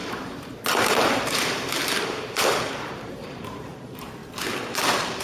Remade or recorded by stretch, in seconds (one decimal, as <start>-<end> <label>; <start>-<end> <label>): 0.0-4.2 remade; 4.2-5.2 recorded